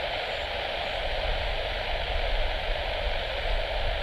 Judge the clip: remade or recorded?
recorded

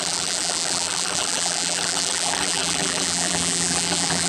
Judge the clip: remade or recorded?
remade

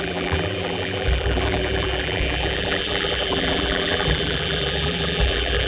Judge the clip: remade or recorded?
remade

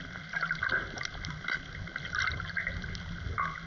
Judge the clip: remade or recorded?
recorded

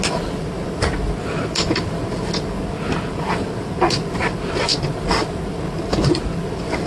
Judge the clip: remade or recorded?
recorded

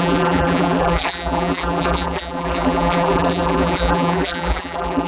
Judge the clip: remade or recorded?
remade